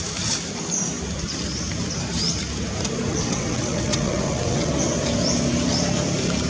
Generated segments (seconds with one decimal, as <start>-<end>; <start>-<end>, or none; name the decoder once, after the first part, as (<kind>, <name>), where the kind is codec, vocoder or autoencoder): 3.1-4.7 (vocoder, WaveNeXt)